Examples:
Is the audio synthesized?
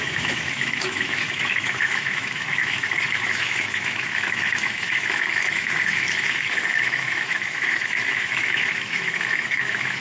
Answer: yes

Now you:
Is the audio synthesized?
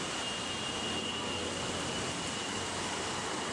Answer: no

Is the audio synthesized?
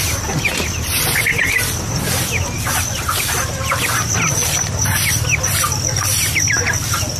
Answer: no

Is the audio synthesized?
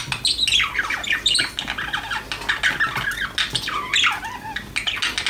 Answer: no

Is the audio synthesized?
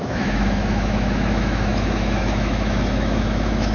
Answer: yes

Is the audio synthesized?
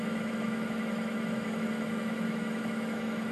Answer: yes